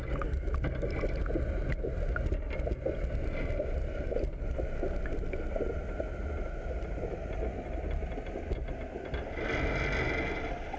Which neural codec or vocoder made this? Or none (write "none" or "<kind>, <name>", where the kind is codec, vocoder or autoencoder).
none